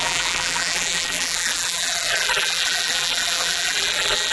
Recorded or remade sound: remade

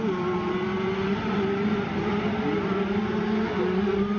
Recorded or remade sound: recorded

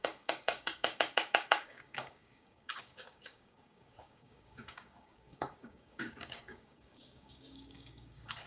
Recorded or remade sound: remade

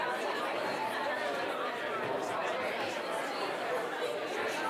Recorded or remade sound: remade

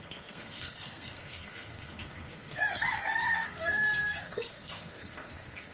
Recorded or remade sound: remade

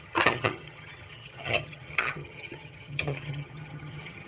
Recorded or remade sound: remade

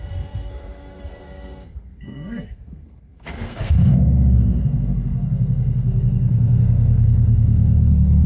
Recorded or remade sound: remade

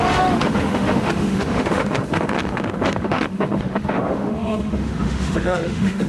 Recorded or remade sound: remade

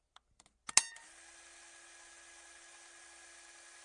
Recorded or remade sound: recorded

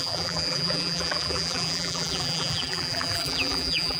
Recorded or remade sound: remade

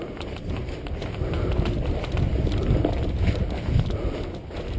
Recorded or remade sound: recorded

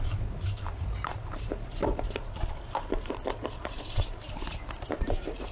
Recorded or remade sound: remade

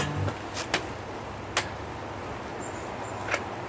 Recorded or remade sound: recorded